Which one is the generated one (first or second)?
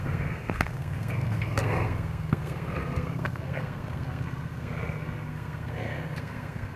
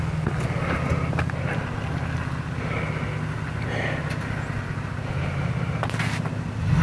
first